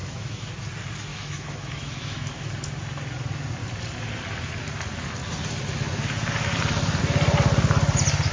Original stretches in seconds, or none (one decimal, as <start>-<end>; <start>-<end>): 0.5-1.1; 2.5-8.3